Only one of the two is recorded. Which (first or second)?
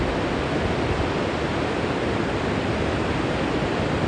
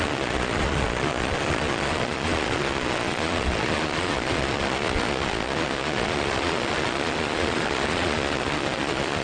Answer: first